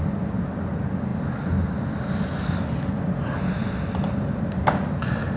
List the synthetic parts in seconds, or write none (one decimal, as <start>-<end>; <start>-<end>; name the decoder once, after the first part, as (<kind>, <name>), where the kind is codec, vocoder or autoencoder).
none

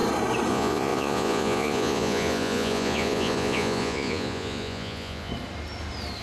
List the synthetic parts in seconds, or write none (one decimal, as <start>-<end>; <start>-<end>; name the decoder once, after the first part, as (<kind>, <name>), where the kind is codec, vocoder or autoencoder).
0.5-5.3 (vocoder, Vocos)

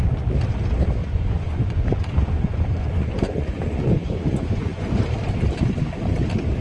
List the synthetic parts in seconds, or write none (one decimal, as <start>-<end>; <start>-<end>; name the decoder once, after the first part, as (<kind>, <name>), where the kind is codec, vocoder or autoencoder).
1.0-4.9 (vocoder, Vocos)

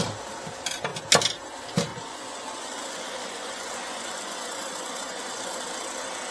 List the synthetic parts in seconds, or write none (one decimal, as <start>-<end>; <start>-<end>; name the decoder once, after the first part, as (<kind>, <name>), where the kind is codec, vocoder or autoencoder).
1.9-5.6 (vocoder, Vocos)

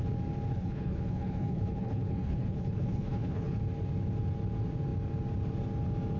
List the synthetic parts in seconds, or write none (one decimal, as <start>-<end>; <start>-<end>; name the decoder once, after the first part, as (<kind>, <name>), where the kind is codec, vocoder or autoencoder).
0.5-3.6 (codec, HILCodec)

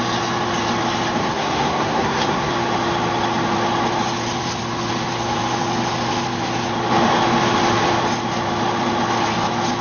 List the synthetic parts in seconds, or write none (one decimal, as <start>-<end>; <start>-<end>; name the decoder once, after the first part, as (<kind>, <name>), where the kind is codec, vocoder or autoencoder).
1.2-2.5 (codec, SNAC)